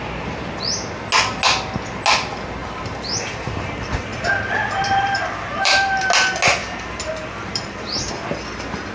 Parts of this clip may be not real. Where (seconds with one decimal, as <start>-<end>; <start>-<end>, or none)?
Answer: 2.6-3.5; 4.1-6.0; 6.6-8.1